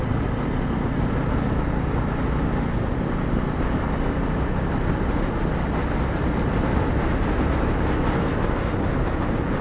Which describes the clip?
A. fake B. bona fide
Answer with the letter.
B